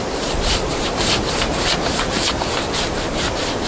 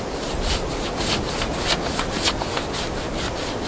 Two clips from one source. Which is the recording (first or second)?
second